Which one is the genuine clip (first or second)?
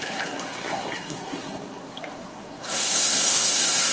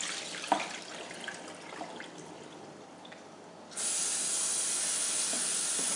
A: second